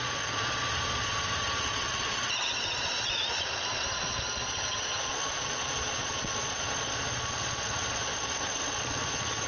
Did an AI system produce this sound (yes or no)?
yes